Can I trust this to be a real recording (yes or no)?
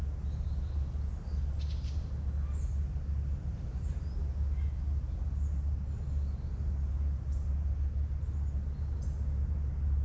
yes